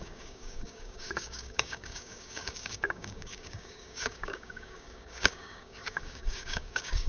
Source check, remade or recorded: remade